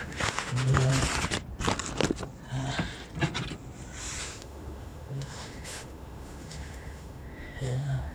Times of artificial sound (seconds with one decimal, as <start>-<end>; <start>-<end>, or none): 0.0-0.9; 4.2-8.1